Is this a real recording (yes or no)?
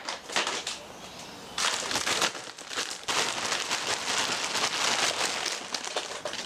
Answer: yes